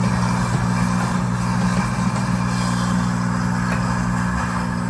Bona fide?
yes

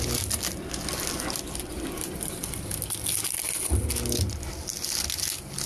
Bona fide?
yes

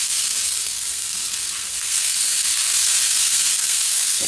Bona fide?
no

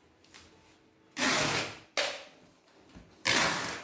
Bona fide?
yes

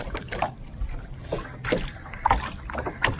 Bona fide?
yes